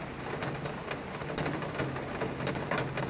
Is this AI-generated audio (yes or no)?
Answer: no